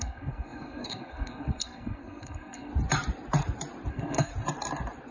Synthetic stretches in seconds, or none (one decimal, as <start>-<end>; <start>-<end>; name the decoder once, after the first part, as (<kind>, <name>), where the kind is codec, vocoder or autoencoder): 0.0-2.7 (codec, SNAC); 3.9-4.3